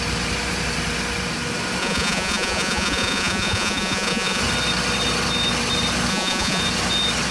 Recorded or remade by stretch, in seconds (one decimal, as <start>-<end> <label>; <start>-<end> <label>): 0.0-1.8 recorded; 1.8-4.4 remade; 4.4-6.1 recorded; 6.1-6.6 remade; 6.6-7.3 recorded